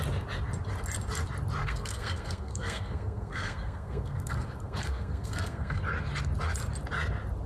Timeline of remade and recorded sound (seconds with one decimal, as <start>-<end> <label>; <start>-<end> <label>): 0.0-1.6 recorded; 1.6-5.8 remade; 5.8-7.5 recorded